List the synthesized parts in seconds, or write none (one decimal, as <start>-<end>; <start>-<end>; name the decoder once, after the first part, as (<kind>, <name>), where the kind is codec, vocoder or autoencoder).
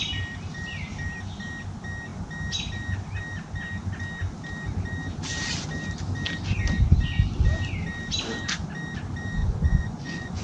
9.4-10.4 (vocoder, Vocos)